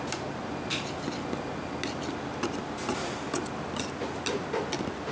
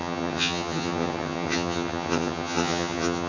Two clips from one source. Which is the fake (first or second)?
second